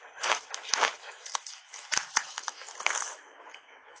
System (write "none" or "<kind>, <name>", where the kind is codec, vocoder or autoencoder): autoencoder, DAC-VAE